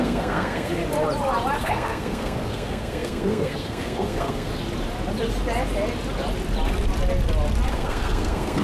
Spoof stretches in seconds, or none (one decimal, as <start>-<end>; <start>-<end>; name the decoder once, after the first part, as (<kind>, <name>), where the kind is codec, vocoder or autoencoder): 0.0-0.8 (codec, SNAC); 1.6-4.5; 7.7-8.6